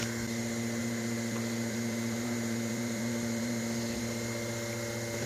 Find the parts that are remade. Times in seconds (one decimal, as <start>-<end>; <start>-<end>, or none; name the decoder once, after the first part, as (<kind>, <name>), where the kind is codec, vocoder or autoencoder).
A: 0.8-4.0 (vocoder, BigVGAN v2)